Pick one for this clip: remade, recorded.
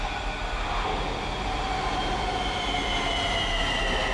recorded